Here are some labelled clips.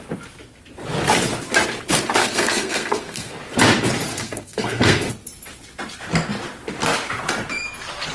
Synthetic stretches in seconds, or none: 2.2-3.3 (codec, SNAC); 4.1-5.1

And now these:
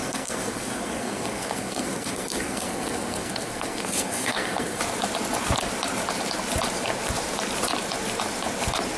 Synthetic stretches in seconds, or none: 0.0-4.8 (codec, SNAC)